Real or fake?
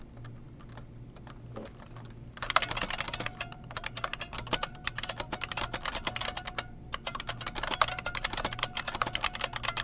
real